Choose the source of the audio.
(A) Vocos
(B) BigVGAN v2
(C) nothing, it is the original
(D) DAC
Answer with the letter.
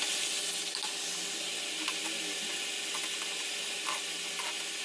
C